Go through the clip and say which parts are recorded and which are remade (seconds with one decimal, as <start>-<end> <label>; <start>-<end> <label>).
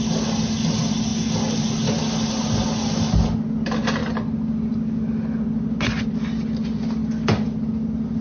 0.0-8.2 recorded